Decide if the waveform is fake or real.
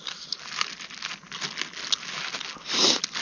real